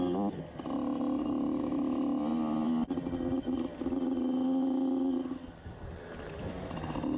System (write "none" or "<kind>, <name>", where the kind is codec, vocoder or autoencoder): none